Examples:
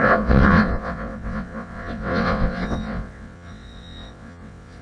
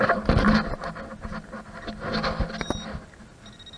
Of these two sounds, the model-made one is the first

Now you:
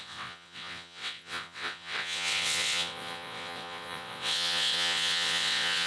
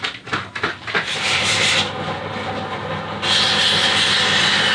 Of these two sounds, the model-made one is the first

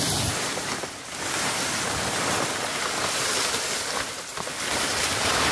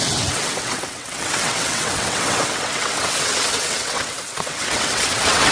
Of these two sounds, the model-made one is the second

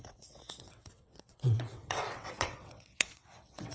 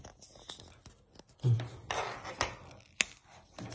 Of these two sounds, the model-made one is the first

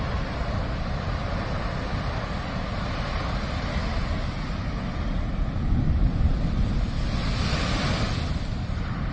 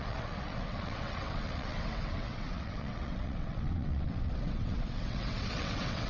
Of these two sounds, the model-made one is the second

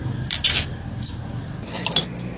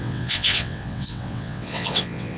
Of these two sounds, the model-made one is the second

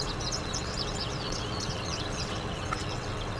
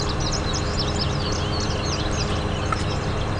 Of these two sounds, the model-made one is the first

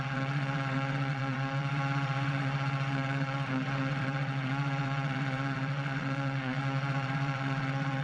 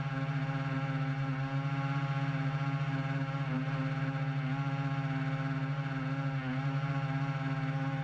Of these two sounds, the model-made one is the first